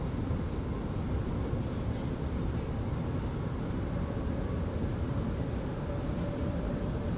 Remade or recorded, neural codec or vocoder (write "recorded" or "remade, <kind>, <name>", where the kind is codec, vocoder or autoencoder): recorded